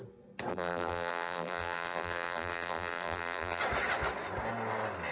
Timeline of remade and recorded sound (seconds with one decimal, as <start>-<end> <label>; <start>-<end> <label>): 0.0-0.5 recorded; 0.5-3.6 remade; 3.6-5.1 recorded